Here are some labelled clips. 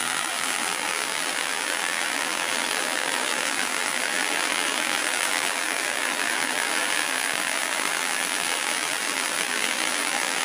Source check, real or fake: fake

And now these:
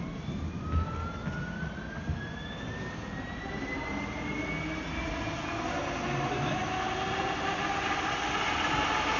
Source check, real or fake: real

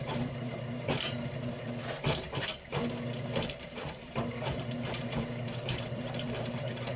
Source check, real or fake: fake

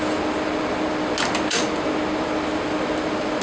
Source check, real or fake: real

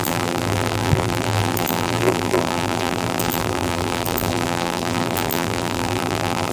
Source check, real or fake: fake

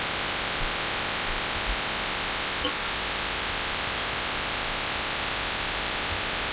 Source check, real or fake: real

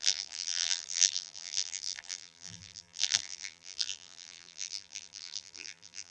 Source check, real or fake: fake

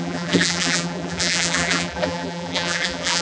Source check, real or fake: fake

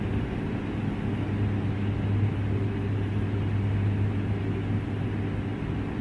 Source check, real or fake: real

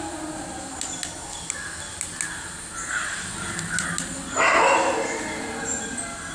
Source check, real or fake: real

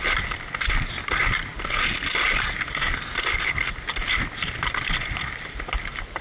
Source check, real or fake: real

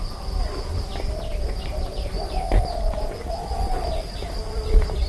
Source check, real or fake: fake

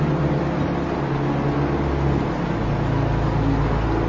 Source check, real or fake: real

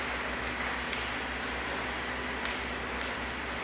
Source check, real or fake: real